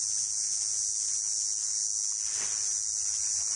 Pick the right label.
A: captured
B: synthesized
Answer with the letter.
A